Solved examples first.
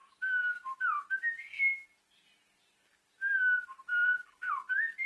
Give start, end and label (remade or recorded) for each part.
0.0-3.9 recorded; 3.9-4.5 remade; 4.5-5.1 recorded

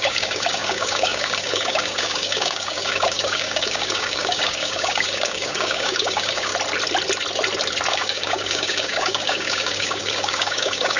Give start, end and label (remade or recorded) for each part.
0.0-6.5 remade; 6.5-7.9 recorded; 7.9-11.0 remade

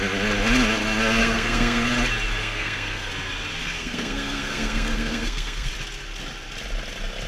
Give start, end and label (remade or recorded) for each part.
0.0-1.2 recorded; 1.2-1.9 remade; 1.9-2.4 recorded; 2.4-3.1 remade; 3.1-3.6 recorded; 3.6-5.7 remade; 5.7-7.3 recorded

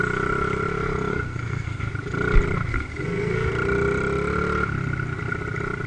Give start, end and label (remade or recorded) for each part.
0.0-1.1 recorded; 1.1-1.8 remade; 1.8-2.7 recorded; 2.7-3.5 remade; 3.5-5.9 recorded

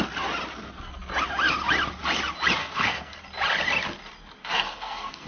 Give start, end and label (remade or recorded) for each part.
0.0-2.6 recorded; 2.6-3.2 remade; 3.2-4.4 recorded; 4.4-5.3 remade